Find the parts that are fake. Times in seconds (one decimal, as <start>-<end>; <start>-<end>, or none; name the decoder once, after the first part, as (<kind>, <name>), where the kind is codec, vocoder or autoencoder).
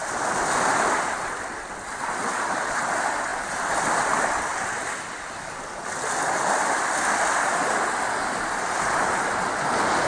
none